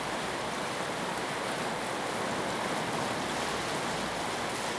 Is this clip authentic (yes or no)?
yes